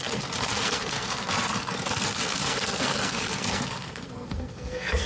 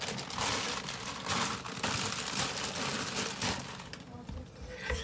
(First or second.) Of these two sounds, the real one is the second